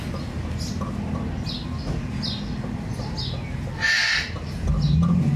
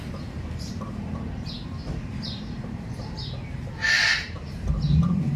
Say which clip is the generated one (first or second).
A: second